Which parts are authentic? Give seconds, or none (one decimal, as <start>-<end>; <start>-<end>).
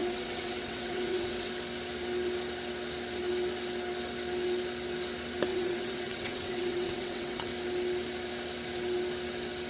1.5-5.5; 7.5-9.7